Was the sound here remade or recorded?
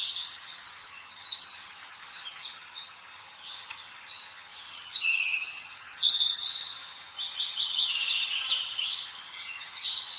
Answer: remade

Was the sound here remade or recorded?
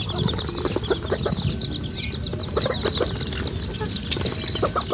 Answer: recorded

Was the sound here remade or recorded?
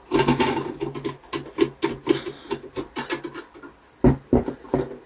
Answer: recorded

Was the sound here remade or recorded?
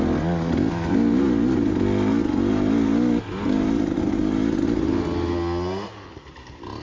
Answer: recorded